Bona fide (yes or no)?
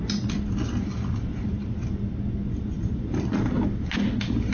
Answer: yes